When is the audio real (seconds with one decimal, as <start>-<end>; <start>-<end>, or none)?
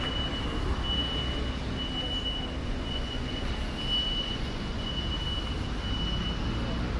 0.0-2.6; 3.4-4.2; 4.9-7.0